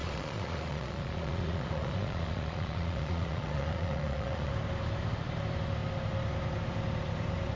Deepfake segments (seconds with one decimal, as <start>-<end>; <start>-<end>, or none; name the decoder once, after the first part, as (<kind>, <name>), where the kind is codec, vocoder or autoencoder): 0.0-4.5 (vocoder, Vocos)